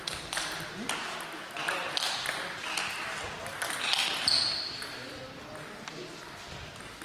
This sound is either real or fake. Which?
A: real